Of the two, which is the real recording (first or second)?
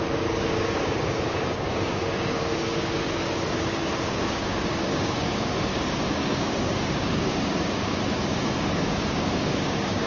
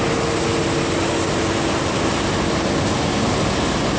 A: second